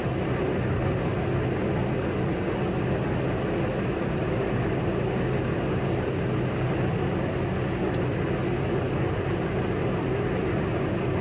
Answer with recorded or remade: recorded